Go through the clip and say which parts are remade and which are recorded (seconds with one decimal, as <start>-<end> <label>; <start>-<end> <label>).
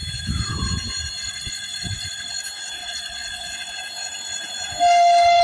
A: 0.0-1.2 recorded; 1.2-2.3 remade; 2.3-2.8 recorded; 2.8-3.7 remade; 3.7-5.4 recorded